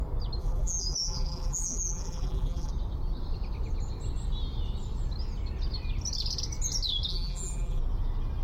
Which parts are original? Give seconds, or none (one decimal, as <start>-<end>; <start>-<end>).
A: 0.0-0.4; 2.7-7.1; 7.8-8.4